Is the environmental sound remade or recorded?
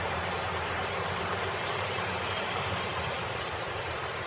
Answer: remade